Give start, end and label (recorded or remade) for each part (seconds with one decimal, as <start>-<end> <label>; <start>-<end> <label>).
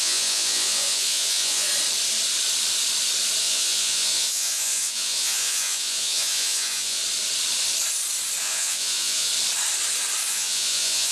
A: 0.0-1.7 remade; 1.7-3.4 recorded; 3.4-7.0 remade; 7.0-8.4 recorded; 8.4-9.3 remade; 9.3-10.3 recorded; 10.3-11.1 remade